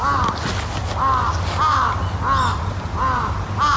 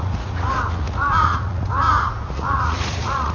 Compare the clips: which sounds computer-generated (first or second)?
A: second